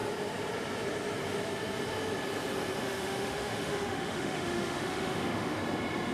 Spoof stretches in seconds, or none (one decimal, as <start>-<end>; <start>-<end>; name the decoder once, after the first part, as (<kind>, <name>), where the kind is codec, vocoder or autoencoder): 2.8-5.6 (autoencoder, DAC-VAE)